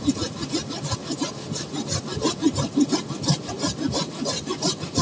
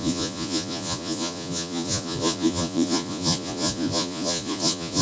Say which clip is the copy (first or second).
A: second